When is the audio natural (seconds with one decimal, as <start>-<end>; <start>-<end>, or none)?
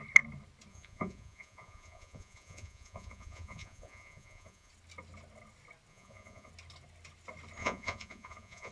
0.0-0.7; 4.7-5.9; 6.5-7.6